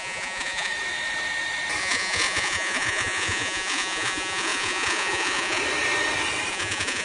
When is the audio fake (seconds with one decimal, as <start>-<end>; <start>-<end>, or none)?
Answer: 0.0-0.7; 1.8-5.6; 6.5-7.0